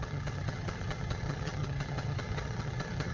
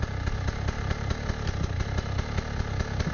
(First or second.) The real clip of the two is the second